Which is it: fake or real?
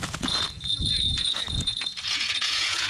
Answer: fake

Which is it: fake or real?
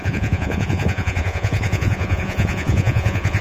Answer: fake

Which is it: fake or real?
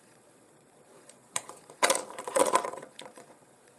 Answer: fake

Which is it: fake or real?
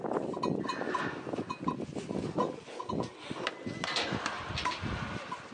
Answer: real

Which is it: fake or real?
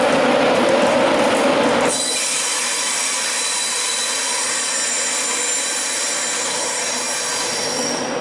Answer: real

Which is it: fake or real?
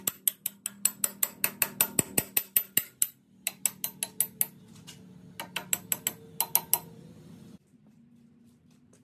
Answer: real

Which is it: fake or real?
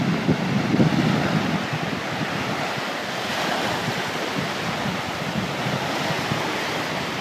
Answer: real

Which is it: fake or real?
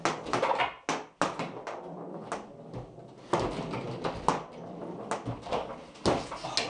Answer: real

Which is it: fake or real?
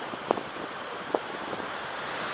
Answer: real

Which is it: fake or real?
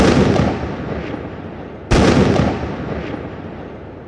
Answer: real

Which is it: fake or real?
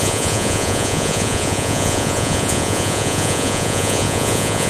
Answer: fake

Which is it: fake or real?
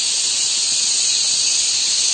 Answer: real